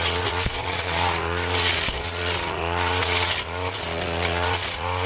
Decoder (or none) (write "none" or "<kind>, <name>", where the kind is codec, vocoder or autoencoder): vocoder, Vocos